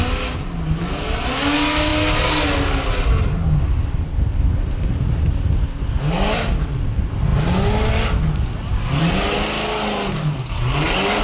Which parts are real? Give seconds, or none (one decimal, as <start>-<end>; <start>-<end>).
0.0-11.2